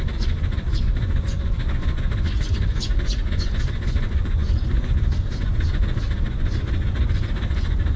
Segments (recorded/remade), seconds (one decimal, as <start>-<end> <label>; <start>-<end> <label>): 0.0-8.0 remade